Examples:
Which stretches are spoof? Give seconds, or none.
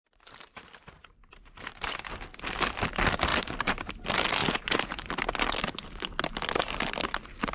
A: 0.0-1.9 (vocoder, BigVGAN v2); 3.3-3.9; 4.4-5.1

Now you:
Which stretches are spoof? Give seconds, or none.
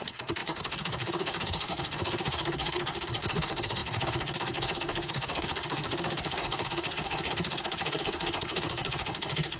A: 0.0-9.6 (codec, SNAC)